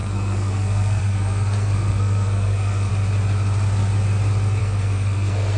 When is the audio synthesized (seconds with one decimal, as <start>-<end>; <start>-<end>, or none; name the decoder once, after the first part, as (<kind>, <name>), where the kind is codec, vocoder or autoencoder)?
0.0-2.9 (codec, SNAC); 4.6-5.6